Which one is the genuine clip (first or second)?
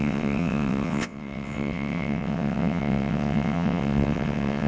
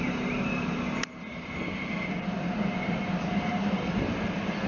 second